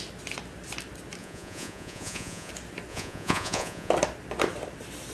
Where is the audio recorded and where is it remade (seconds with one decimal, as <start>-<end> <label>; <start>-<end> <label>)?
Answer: 0.0-1.2 recorded; 1.2-2.5 remade; 2.5-2.9 recorded; 2.9-3.9 remade; 3.9-5.1 recorded